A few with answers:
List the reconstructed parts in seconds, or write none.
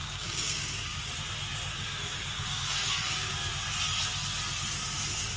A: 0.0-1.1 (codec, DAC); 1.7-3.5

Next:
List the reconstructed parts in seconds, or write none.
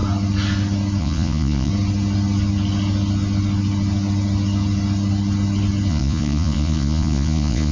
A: 1.0-1.7 (vocoder, Vocos); 5.9-7.7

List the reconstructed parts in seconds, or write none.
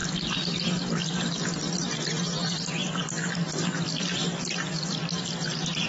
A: 0.0-1.4 (vocoder, BigVGAN v2); 3.0-5.0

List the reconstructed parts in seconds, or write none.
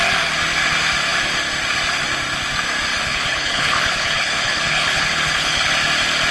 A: 2.9-5.7 (codec, HILCodec)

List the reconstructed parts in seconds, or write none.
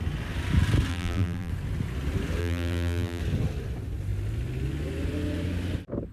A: 0.9-1.5 (vocoder, BigVGAN v2); 2.4-3.2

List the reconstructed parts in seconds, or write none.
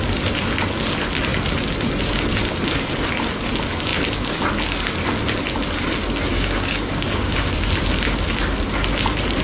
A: 6.3-7.5 (codec, DAC)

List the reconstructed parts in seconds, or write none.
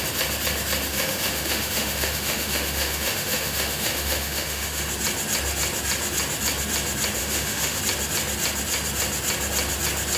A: 0.9-4.8 (autoencoder, DAC-VAE); 7.2-7.8